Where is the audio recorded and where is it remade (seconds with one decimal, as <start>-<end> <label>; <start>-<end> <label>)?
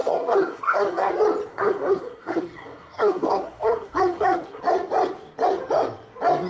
0.0-1.1 remade; 1.1-1.5 recorded; 1.5-4.6 remade; 4.6-6.5 recorded